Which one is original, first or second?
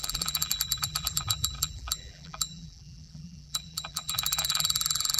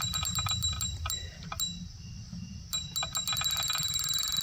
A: second